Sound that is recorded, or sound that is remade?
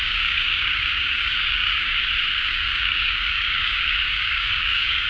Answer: remade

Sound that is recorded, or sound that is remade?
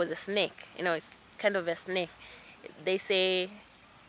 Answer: recorded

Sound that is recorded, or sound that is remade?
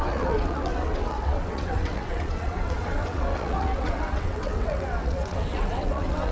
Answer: remade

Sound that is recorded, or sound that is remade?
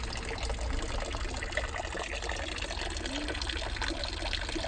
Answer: recorded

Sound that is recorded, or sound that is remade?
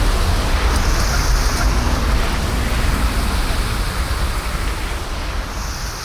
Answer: recorded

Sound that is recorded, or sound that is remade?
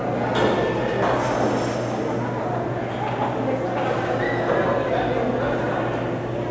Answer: recorded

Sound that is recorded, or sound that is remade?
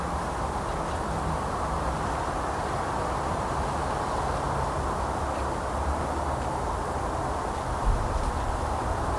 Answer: remade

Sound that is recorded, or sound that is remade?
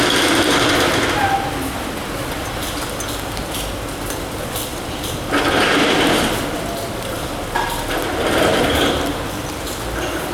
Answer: recorded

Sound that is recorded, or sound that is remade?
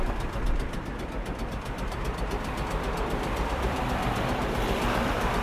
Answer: remade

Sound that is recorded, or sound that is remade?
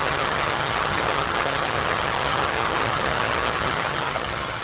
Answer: remade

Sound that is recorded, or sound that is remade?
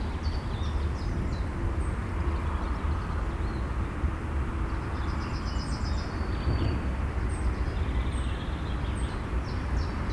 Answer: remade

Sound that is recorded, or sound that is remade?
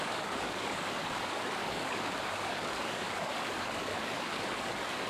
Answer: remade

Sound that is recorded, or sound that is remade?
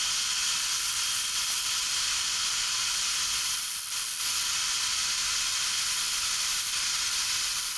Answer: recorded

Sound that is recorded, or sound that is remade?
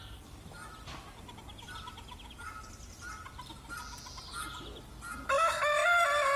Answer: recorded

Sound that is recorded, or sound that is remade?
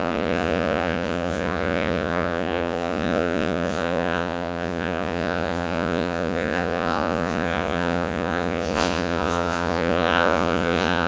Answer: remade